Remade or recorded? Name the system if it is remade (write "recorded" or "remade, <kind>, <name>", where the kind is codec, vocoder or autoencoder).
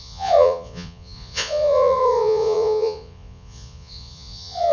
remade, vocoder, Vocos